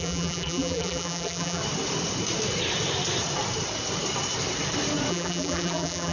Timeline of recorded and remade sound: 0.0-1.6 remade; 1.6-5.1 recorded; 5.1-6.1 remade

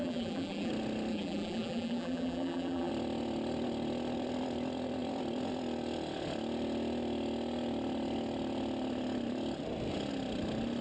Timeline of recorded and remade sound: 0.0-0.7 remade; 0.7-1.1 recorded; 1.1-2.9 remade; 2.9-10.8 recorded

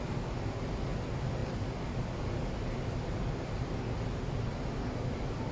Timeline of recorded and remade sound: 0.0-5.5 recorded

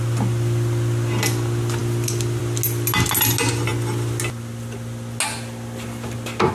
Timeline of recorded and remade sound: 0.0-6.5 recorded

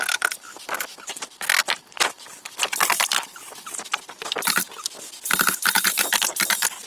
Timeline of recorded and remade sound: 0.0-1.6 recorded; 1.6-2.6 remade; 2.6-6.9 recorded

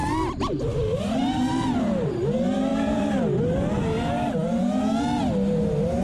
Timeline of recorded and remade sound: 0.0-2.7 recorded; 2.7-3.4 remade; 3.4-6.0 recorded